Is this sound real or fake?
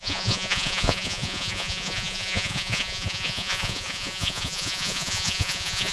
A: fake